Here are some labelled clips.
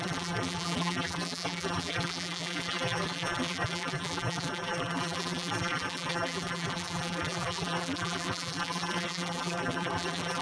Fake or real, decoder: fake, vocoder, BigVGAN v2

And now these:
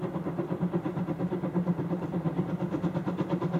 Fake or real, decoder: real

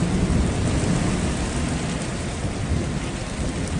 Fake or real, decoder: real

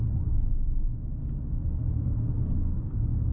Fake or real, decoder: real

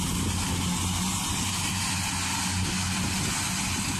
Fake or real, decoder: real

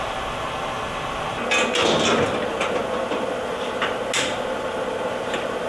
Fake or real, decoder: real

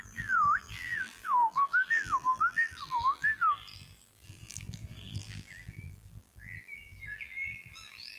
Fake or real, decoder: fake, vocoder, BigVGAN v2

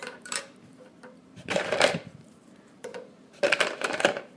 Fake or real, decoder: fake, vocoder, BigVGAN v2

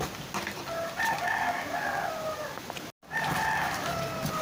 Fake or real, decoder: real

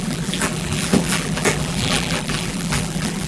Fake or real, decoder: fake, vocoder, BigVGAN v2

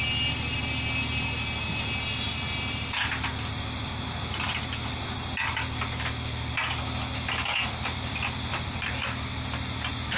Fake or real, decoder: real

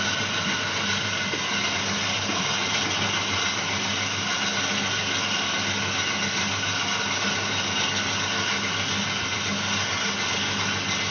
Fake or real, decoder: real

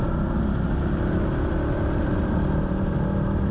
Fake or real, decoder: real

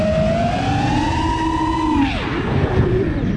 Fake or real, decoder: real